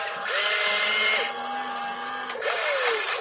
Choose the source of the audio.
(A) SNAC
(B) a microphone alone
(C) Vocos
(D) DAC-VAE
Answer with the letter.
B